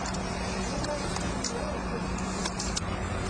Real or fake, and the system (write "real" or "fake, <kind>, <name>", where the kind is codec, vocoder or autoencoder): fake, vocoder, BigVGAN v2